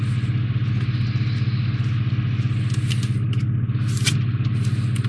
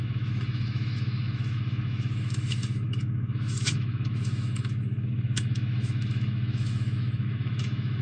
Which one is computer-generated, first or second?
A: second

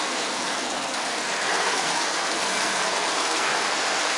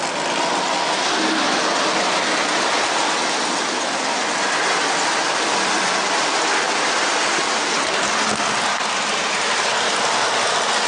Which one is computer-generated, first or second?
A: first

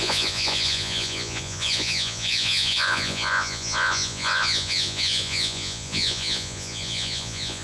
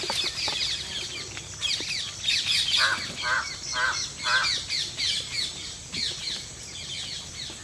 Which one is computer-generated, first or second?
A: first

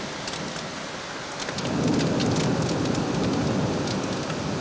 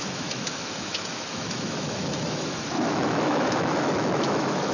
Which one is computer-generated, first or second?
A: second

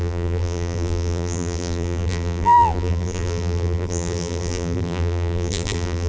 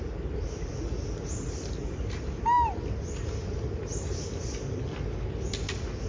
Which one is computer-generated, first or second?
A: first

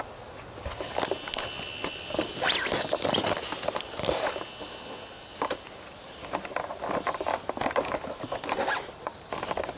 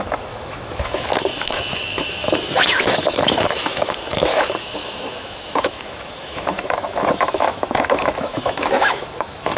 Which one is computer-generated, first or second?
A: second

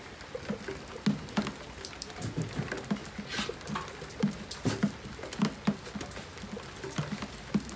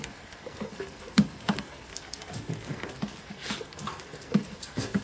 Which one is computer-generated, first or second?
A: second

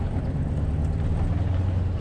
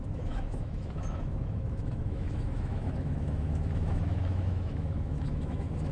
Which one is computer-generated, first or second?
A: second